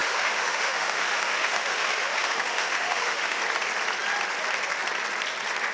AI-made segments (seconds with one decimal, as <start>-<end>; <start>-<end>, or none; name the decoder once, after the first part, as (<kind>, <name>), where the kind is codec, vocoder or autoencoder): 0.0-3.4 (autoencoder, DAC-VAE)